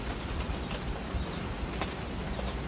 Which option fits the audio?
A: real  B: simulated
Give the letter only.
A